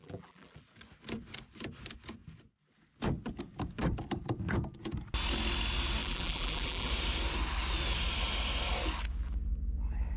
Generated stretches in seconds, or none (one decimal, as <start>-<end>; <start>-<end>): 0.0-0.6; 6.0-6.9